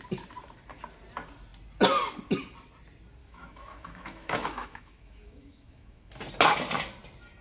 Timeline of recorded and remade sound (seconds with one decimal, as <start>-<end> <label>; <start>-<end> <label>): 0.0-3.2 recorded; 3.2-6.1 remade; 6.1-7.4 recorded